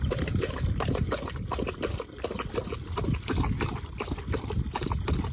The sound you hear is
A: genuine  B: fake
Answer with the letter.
A